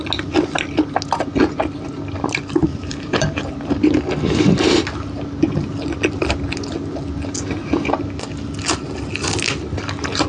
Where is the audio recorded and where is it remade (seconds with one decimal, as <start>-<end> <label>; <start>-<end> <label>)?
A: 0.0-2.7 recorded; 2.7-3.5 remade; 3.5-10.3 recorded